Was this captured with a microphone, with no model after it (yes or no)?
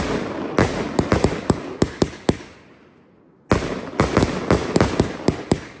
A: yes